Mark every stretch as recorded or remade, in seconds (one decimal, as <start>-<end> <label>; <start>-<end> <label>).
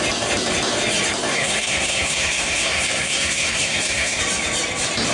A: 0.0-1.3 recorded; 1.3-4.2 remade; 4.2-5.1 recorded